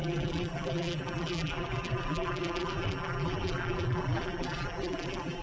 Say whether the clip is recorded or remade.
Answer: remade